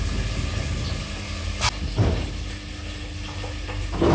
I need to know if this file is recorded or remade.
recorded